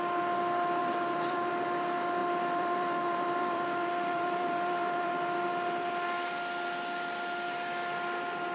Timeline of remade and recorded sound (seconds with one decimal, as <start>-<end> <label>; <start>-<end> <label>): 0.0-0.8 recorded; 0.8-1.5 remade; 1.5-2.2 recorded; 2.2-5.1 remade; 5.1-8.5 recorded